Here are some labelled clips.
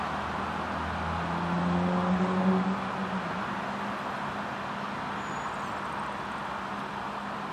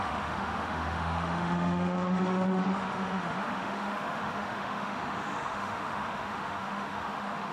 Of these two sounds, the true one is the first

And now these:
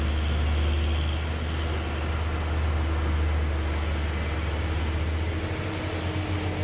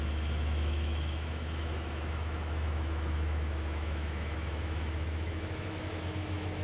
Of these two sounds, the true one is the first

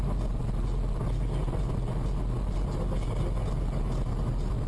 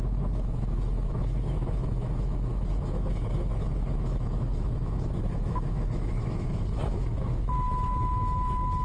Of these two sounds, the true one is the first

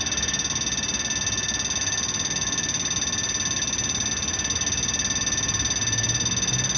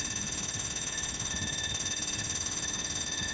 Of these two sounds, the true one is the first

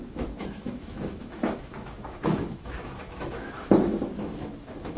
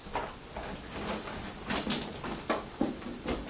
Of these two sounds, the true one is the second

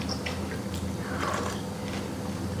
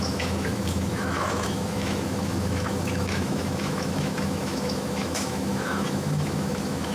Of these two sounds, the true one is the first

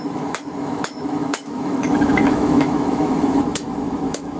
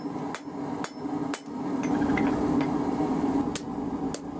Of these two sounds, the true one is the second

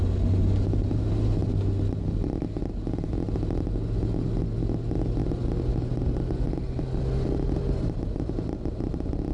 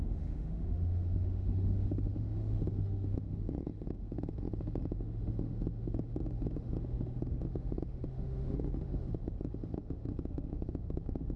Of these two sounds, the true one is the first